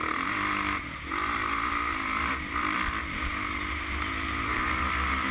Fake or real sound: real